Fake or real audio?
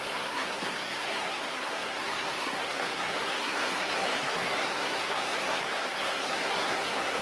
fake